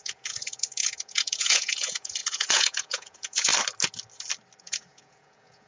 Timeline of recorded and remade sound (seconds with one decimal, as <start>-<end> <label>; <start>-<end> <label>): 0.0-3.5 remade; 3.5-4.6 recorded; 4.6-5.7 remade